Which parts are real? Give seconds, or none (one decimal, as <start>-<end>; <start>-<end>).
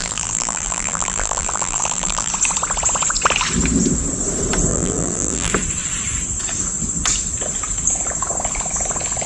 2.3-4.7; 5.5-9.3